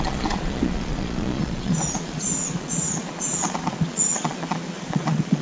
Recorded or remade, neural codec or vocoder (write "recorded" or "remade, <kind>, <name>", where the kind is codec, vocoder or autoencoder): remade, vocoder, Vocos